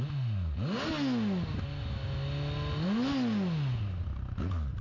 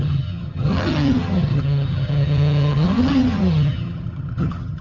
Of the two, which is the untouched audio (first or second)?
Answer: first